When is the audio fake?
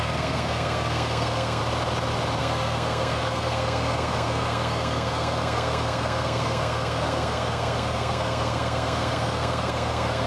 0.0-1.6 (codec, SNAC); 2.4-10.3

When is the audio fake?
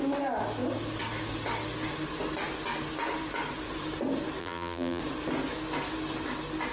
4.4-5.0 (vocoder, BigVGAN v2)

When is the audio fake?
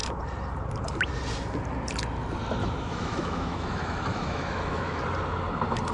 2.6-5.0 (autoencoder, DAC-VAE)